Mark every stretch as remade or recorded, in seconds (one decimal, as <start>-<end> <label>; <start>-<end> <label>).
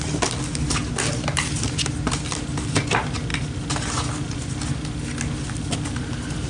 0.0-6.5 recorded